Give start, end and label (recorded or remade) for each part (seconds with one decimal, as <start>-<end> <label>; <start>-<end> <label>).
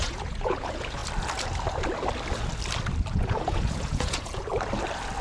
0.0-1.0 remade; 1.0-3.1 recorded; 3.1-4.5 remade; 4.5-5.2 recorded